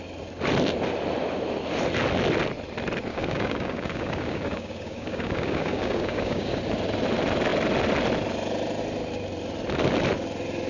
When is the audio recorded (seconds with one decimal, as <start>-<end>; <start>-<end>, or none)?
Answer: 0.0-3.1; 6.6-10.7